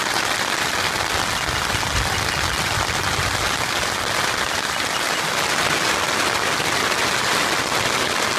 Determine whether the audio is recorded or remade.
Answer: recorded